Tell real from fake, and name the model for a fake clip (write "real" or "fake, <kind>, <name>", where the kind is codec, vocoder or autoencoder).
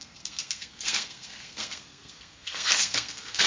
fake, codec, SNAC